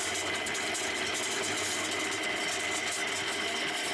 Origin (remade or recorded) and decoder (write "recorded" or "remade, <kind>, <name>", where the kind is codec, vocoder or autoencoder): recorded